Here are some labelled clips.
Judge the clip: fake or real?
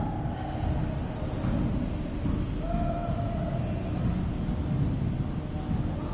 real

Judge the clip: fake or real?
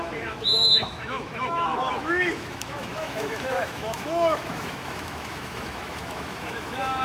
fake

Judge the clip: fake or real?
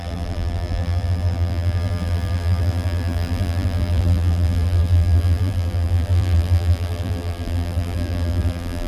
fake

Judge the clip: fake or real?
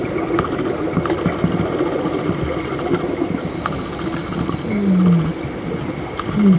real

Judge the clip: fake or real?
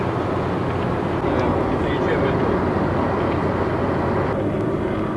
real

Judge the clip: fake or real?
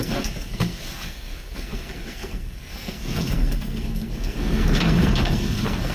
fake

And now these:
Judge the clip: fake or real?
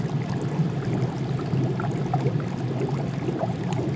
real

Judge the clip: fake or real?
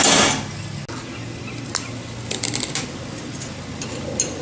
real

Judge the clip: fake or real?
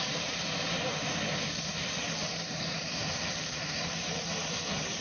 fake